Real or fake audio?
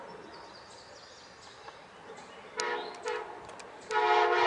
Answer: real